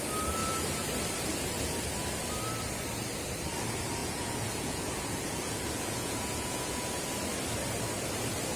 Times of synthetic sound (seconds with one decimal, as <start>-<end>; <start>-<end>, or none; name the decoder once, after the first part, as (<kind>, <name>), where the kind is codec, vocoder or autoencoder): 4.0-7.0 (vocoder, Vocos)